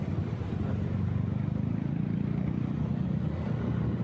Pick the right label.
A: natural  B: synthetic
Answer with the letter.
A